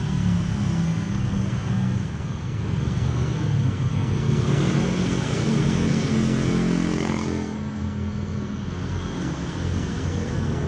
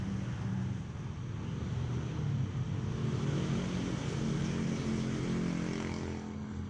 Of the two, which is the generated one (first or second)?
first